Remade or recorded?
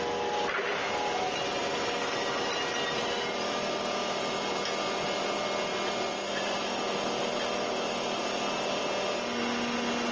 recorded